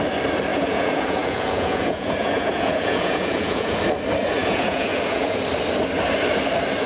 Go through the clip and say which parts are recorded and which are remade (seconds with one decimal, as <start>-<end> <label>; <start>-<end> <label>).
0.0-0.5 recorded; 0.5-3.8 remade; 3.8-4.4 recorded; 4.4-5.4 remade; 5.4-6.9 recorded